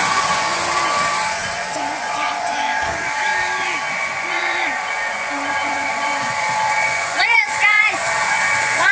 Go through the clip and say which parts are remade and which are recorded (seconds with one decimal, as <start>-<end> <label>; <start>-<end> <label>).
0.0-3.3 remade; 3.3-3.9 recorded; 3.9-8.9 remade